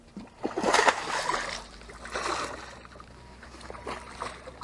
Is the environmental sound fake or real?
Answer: real